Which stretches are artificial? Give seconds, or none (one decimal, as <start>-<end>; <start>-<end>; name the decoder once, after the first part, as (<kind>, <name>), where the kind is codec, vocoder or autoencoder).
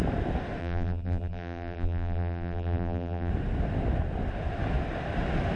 0.6-3.3 (vocoder, BigVGAN v2)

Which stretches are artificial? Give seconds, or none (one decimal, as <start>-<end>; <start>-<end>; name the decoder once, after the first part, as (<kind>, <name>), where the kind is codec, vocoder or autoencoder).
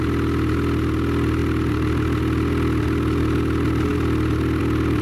none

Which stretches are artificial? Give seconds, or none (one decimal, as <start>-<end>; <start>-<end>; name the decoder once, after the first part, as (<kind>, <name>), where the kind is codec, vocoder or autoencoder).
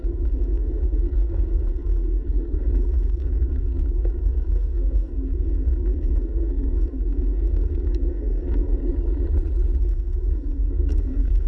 0.0-8.8 (codec, SNAC); 9.8-11.5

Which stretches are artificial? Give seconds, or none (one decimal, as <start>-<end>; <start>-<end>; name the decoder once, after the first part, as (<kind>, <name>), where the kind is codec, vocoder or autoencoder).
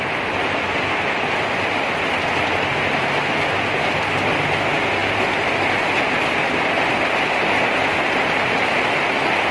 none